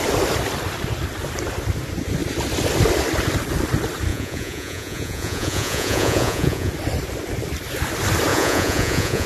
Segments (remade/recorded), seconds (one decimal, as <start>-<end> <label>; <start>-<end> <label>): 0.0-4.1 recorded; 4.1-6.7 remade; 6.7-8.3 recorded; 8.3-9.3 remade

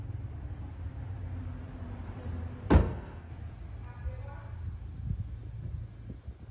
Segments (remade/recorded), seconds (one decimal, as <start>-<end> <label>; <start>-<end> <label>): 0.0-2.8 recorded; 2.8-3.3 remade; 3.3-6.5 recorded

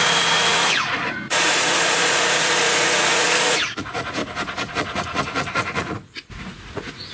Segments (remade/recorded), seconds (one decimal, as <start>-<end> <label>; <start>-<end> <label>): 0.0-4.2 remade; 4.2-4.7 recorded; 4.7-7.1 remade

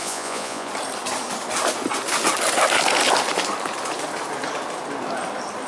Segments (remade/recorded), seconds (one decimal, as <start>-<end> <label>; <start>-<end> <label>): 0.0-0.7 remade; 0.7-5.7 recorded

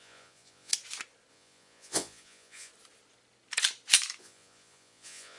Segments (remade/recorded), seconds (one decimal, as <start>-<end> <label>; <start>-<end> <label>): 0.0-0.7 remade; 0.7-1.3 recorded; 1.3-2.7 remade; 2.7-4.2 recorded; 4.2-5.4 remade

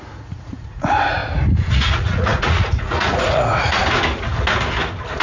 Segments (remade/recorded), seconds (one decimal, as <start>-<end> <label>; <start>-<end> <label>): 0.0-1.2 remade; 1.2-1.8 recorded; 1.8-3.8 remade; 3.8-5.2 recorded

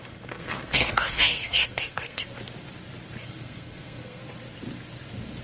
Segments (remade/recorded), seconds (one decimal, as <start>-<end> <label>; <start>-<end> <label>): 0.0-2.2 remade; 2.2-3.2 recorded; 3.2-4.2 remade; 4.2-5.4 recorded